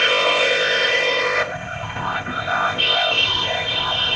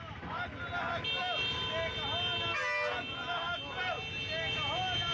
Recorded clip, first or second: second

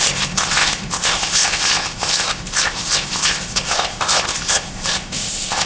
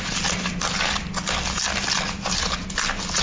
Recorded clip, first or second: second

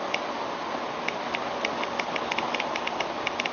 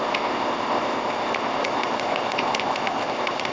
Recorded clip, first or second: first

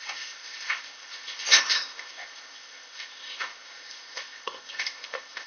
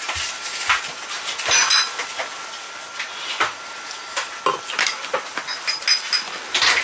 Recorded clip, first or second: second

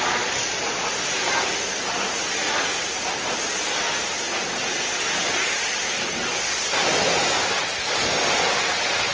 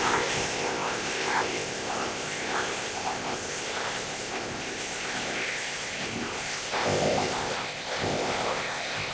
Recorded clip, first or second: first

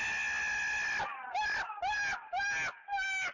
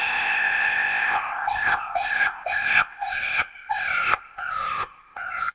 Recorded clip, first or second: first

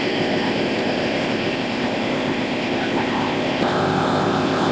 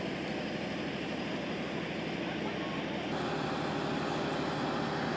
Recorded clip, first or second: second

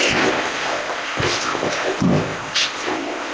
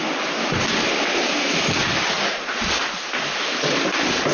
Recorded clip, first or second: second